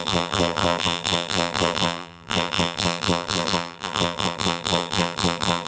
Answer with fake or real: fake